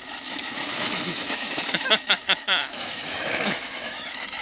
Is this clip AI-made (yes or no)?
yes